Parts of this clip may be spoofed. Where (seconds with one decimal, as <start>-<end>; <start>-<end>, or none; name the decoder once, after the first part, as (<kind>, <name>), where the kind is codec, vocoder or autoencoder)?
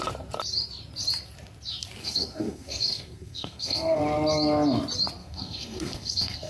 2.0-4.0 (codec, SNAC); 5.2-6.5